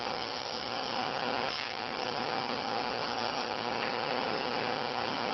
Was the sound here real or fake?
fake